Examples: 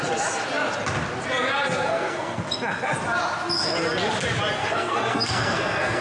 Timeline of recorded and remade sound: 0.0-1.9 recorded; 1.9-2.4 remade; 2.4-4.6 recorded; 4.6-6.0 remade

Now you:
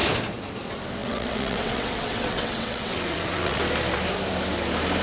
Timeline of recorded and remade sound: 0.0-1.0 recorded; 1.0-3.6 remade; 3.6-5.0 recorded

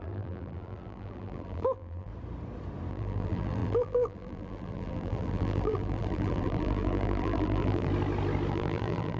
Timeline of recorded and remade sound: 0.0-2.1 remade; 2.1-2.9 recorded; 2.9-7.9 remade; 7.9-8.5 recorded; 8.5-9.2 remade

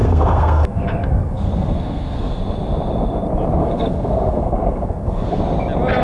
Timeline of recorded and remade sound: 0.0-2.4 remade; 2.4-3.6 recorded; 3.6-5.4 remade; 5.4-6.0 recorded

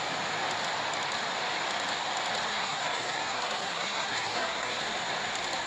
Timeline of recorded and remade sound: 0.0-2.5 recorded; 2.5-4.8 remade; 4.8-5.7 recorded

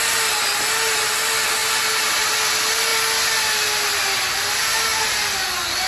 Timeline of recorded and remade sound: 0.0-5.9 recorded